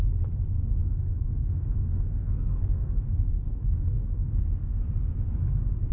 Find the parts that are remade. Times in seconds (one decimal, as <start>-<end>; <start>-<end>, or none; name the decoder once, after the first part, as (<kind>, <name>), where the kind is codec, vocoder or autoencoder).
0.8-4.3 (codec, SNAC)